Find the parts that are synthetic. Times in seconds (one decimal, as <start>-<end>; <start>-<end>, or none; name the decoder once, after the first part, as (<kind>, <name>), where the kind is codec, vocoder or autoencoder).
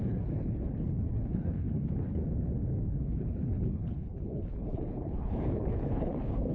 0.0-2.2 (codec, HILCodec); 3.0-6.5